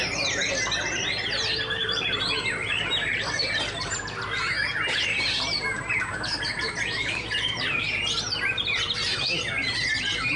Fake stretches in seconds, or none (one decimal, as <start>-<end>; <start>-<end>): 0.0-10.4